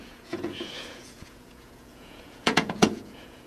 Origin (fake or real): fake